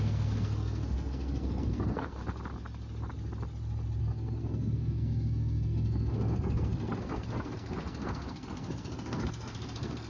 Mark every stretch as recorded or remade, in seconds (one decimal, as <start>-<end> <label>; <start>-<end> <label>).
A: 0.0-2.2 remade; 2.2-4.0 recorded; 4.0-10.1 remade

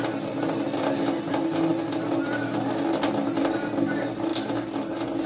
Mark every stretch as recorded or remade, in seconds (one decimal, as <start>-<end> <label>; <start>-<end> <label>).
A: 0.0-5.3 recorded

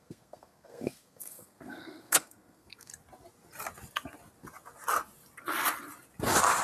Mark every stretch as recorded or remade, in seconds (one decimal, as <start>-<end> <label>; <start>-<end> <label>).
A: 0.0-2.9 remade; 2.9-6.6 recorded

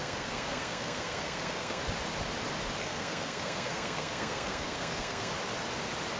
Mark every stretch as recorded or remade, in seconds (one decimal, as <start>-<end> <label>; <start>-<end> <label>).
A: 0.0-1.8 remade; 1.8-2.8 recorded; 2.8-5.3 remade; 5.3-6.2 recorded